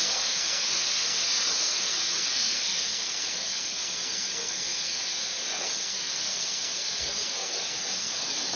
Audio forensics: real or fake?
fake